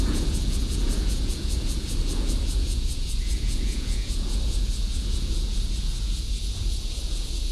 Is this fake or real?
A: fake